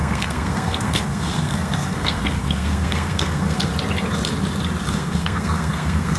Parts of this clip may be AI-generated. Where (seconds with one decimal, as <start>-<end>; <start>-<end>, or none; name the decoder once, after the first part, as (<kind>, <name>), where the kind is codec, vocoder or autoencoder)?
0.0-3.7 (codec, SNAC); 4.9-6.2